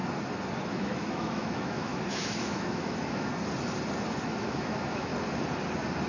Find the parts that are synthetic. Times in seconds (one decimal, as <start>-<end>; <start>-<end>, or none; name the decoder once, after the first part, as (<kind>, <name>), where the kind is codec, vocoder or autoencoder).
0.7-3.3 (autoencoder, DAC-VAE); 4.2-5.1